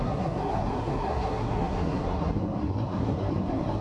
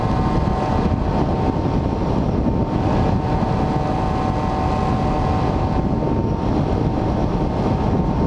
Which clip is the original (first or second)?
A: second